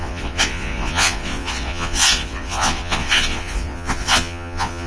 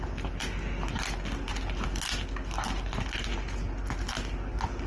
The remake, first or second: first